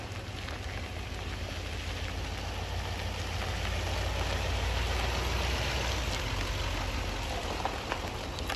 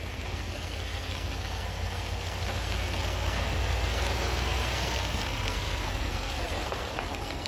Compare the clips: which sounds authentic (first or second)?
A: first